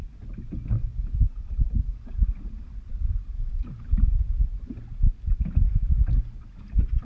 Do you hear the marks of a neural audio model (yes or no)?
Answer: no